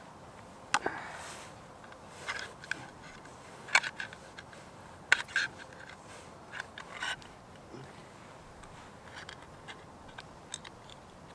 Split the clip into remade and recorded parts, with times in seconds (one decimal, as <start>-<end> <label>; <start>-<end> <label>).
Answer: 0.0-11.3 recorded